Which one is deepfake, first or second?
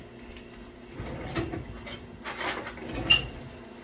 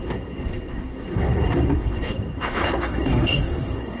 second